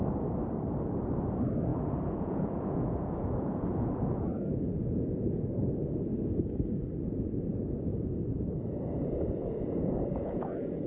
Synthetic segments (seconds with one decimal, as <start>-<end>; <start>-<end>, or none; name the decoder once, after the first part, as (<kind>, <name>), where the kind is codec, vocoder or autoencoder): 1.7-5.4 (vocoder, Vocos); 7.9-10.9